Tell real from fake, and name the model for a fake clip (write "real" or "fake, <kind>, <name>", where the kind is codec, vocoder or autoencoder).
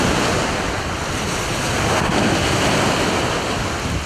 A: real